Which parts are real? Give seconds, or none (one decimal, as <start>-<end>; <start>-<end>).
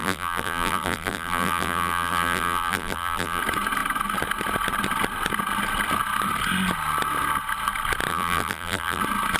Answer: 3.4-8.1; 9.0-9.4